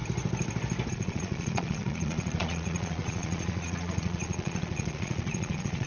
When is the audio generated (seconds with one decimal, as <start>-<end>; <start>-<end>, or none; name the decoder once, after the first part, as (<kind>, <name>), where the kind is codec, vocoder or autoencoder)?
0.9-5.9 (vocoder, Vocos)